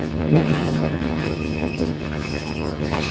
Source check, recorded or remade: remade